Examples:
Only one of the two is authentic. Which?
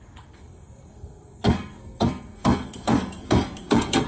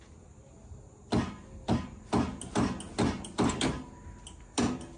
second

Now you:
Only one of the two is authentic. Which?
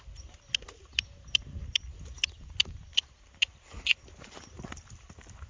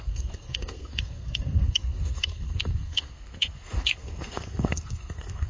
first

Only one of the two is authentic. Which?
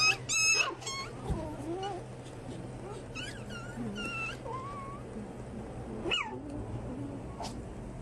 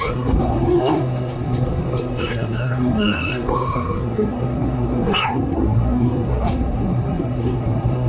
first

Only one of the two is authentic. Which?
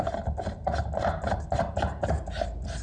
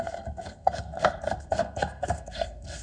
first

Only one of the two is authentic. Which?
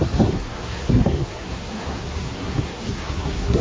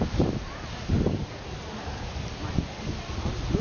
second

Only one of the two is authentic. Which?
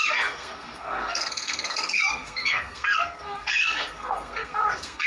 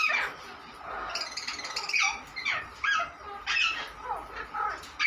second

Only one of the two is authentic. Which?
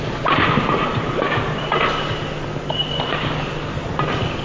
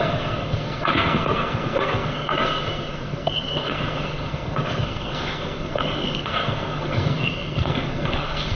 first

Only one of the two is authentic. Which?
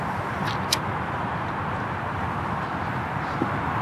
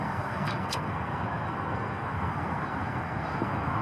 first